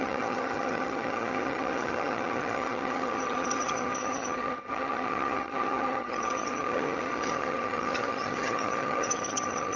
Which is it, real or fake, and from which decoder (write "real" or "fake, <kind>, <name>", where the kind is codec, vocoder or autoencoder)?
fake, vocoder, HiFi-GAN